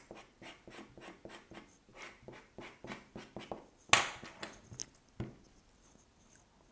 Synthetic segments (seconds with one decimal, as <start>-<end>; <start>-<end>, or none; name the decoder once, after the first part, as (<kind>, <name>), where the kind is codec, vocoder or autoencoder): none